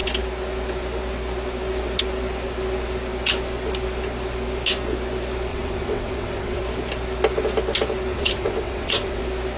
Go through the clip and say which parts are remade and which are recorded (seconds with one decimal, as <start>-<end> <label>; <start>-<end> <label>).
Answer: 0.0-5.5 recorded; 5.5-6.6 remade; 6.6-8.1 recorded; 8.1-9.2 remade; 9.2-9.6 recorded